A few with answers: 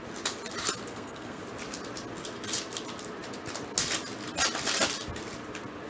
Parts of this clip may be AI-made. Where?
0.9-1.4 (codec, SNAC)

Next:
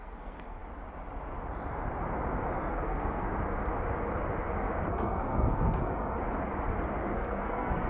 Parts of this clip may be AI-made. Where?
0.0-0.6 (codec, SNAC); 2.7-3.3; 4.9-5.9; 7.0-7.9

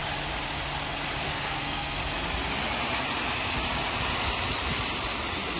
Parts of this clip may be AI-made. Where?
1.2-2.0 (codec, SNAC)

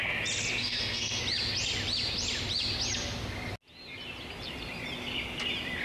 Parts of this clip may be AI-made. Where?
0.6-1.2 (codec, SNAC)

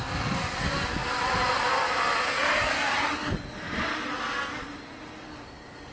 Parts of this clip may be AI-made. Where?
none